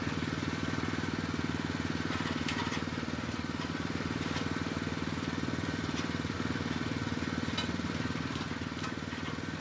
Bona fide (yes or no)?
yes